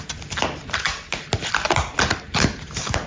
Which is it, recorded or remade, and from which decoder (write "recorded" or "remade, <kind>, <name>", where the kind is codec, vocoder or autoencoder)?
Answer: recorded